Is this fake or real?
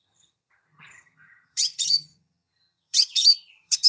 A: fake